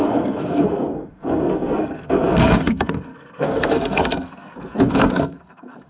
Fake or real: fake